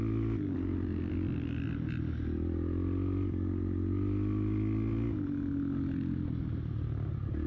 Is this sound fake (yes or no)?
no